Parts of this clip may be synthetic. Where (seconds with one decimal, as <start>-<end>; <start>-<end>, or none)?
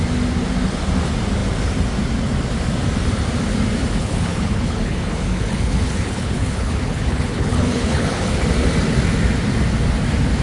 4.0-8.4